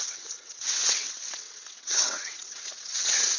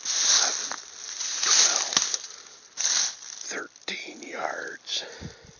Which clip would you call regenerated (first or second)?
first